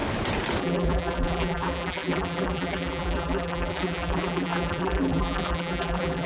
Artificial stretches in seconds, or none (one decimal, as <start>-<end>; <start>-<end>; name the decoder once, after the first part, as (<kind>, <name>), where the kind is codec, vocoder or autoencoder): 0.6-6.3 (vocoder, BigVGAN v2)